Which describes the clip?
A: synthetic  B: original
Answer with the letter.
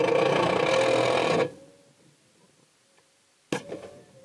B